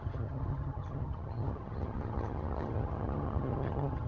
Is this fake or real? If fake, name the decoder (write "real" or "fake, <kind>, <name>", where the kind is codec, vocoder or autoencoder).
fake, vocoder, HiFi-GAN